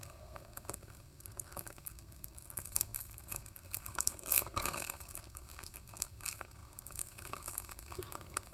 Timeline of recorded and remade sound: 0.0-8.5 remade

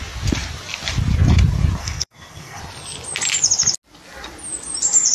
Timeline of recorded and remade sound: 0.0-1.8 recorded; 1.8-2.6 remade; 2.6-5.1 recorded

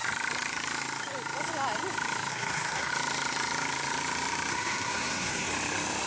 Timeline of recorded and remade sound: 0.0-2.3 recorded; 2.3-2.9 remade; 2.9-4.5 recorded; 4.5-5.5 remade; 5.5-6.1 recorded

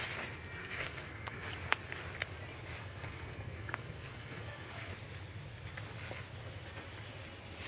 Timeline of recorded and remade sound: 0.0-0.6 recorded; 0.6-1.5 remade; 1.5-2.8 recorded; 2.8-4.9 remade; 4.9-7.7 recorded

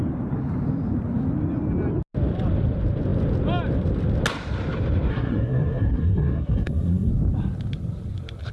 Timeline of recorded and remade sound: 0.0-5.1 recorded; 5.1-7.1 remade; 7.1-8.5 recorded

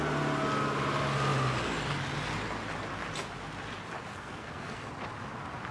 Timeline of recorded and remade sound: 0.0-4.1 recorded; 4.1-4.9 remade; 4.9-5.7 recorded